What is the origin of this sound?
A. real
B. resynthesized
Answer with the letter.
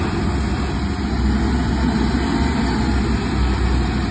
A